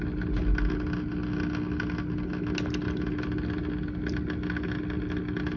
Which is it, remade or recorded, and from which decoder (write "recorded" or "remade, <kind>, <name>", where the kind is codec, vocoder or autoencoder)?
recorded